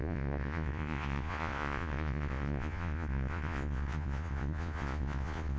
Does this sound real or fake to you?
fake